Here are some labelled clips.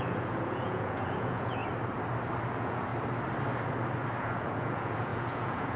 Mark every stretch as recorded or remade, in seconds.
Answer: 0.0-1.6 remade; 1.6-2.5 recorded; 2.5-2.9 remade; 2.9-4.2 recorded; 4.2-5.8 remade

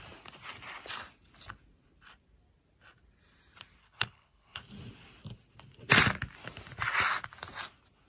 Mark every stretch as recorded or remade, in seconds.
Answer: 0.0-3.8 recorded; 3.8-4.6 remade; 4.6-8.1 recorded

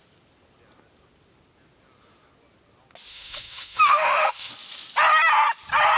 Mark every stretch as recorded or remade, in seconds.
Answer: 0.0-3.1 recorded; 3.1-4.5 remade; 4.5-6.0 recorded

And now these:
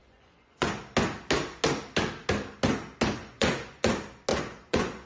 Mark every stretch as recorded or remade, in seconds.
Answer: 0.0-0.8 remade; 0.8-3.2 recorded; 3.2-3.9 remade; 3.9-4.3 recorded; 4.3-5.1 remade

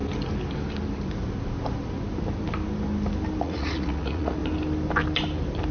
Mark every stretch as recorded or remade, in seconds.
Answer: 0.0-3.4 recorded; 3.4-4.4 remade; 4.4-5.7 recorded

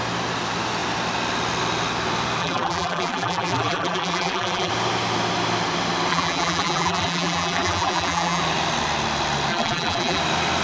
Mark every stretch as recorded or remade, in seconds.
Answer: 0.0-2.4 recorded; 2.4-4.7 remade; 4.7-6.1 recorded; 6.1-8.4 remade; 8.4-9.5 recorded; 9.5-10.2 remade; 10.2-10.6 recorded